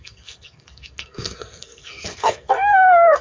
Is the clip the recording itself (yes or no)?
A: no